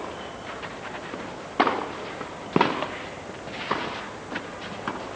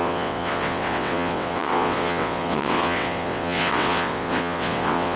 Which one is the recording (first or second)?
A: first